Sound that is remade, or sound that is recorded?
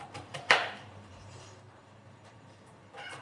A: remade